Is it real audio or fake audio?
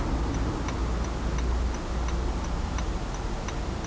real